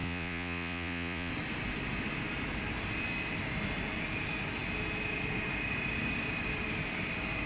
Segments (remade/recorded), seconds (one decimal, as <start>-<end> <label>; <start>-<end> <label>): 0.0-1.3 remade; 1.3-7.5 recorded